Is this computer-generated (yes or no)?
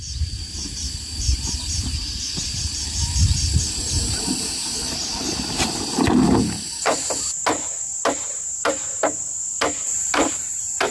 yes